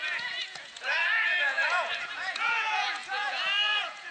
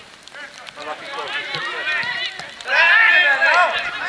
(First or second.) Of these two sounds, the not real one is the first